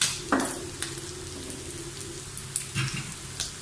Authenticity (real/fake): real